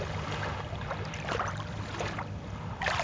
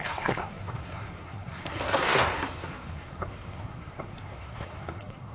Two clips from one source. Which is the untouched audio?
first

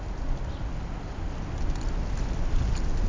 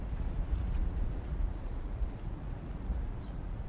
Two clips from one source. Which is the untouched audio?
first